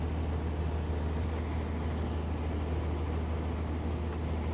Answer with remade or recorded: recorded